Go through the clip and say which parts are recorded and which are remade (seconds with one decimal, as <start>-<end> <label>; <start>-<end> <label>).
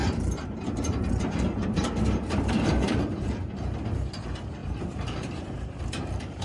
0.0-3.5 remade; 3.5-4.6 recorded; 4.6-6.4 remade